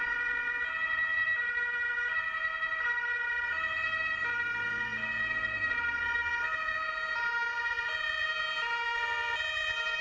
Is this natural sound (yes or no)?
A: yes